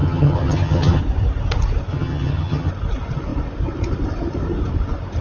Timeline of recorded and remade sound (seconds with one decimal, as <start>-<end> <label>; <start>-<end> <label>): 0.0-1.0 remade; 1.0-1.9 recorded; 1.9-2.7 remade; 2.7-5.2 recorded